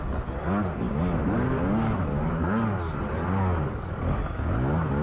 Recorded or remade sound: recorded